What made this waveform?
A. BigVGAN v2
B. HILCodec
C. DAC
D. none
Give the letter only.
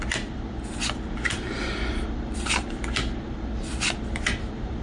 A